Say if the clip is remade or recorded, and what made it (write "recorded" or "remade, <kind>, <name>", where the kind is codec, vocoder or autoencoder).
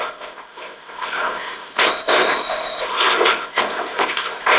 remade, codec, ZipCodec